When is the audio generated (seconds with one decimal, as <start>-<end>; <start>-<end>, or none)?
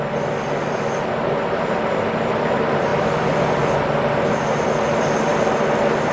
none